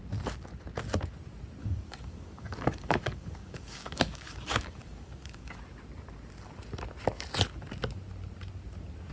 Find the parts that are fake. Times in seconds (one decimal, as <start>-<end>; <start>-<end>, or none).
1.6-5.6